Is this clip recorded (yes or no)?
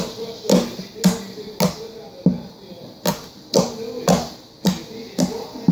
yes